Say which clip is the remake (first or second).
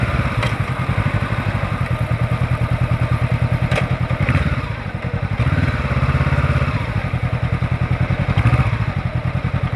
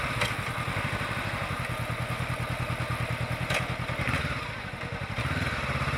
first